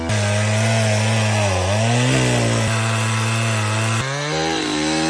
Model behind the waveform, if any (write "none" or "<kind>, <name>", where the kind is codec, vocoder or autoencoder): none